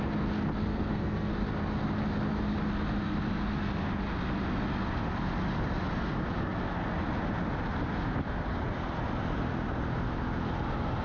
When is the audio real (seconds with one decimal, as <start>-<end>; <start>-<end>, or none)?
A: 0.0-0.6; 1.3-11.0